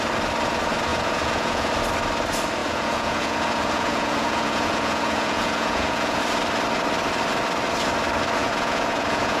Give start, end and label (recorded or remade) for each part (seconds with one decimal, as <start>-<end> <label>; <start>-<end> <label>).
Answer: 0.0-0.9 recorded; 0.9-1.7 remade; 1.7-2.6 recorded; 2.6-6.2 remade; 6.2-8.4 recorded; 8.4-9.4 remade